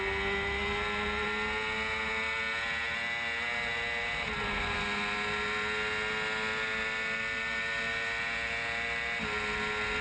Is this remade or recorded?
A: recorded